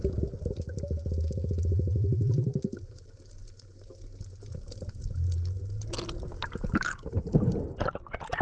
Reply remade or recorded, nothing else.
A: recorded